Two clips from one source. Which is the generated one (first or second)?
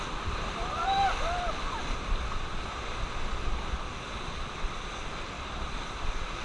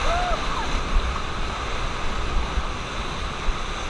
first